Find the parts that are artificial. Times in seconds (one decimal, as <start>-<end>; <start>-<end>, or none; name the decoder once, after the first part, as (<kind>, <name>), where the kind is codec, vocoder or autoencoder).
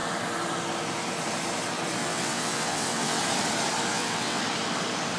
2.0-3.2 (vocoder, WaveNeXt); 3.9-4.4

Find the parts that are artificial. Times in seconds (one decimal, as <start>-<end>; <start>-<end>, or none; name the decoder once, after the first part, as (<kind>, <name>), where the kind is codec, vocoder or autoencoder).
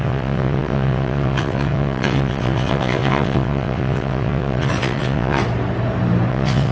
0.0-5.4 (vocoder, WaveNeXt); 6.3-6.7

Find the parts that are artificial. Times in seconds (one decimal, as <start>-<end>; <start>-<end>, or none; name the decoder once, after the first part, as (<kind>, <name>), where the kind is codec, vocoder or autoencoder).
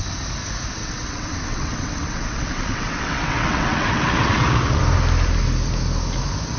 0.8-4.8 (vocoder, WaveNeXt)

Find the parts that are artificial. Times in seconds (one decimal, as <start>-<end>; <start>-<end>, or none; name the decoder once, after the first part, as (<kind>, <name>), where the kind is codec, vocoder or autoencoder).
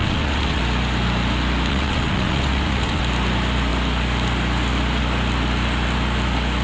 0.0-0.6 (vocoder, WaveNeXt); 1.7-3.0